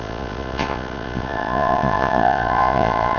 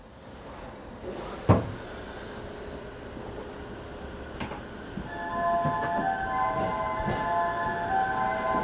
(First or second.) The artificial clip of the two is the first